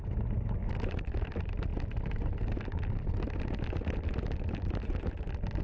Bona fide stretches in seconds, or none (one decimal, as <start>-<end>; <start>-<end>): 0.0-5.6